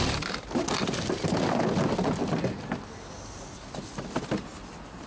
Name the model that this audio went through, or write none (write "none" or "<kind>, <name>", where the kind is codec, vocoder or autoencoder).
none